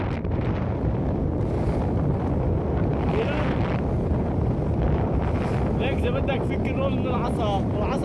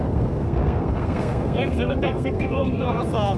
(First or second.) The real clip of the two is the first